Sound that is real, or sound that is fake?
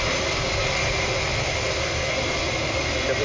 real